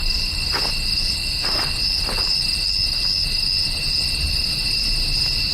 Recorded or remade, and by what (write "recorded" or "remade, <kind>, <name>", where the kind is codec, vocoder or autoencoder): recorded